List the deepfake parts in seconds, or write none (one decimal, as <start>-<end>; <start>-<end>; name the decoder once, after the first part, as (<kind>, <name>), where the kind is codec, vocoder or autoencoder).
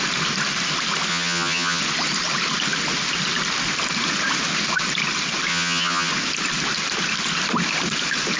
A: 1.1-1.8 (vocoder, HiFi-GAN); 5.5-6.1